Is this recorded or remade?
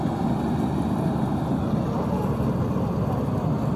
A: recorded